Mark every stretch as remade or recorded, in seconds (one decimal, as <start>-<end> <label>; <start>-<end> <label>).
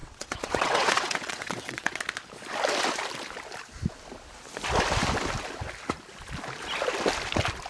0.0-2.0 remade; 2.0-7.7 recorded